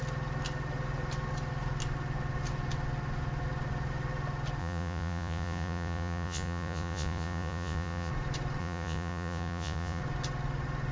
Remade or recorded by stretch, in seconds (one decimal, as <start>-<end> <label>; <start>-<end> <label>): 0.0-4.6 recorded; 4.6-8.1 remade; 8.1-8.6 recorded; 8.6-10.0 remade; 10.0-10.9 recorded